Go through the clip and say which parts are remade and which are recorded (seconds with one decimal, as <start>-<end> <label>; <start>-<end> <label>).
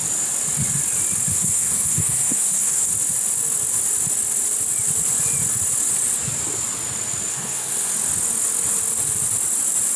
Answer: 0.0-1.3 recorded; 1.3-2.9 remade; 2.9-7.3 recorded; 7.3-7.9 remade; 7.9-10.0 recorded